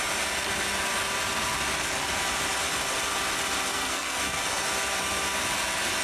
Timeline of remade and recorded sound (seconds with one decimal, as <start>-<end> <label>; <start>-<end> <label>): 0.0-3.7 recorded; 3.7-4.4 remade; 4.4-6.0 recorded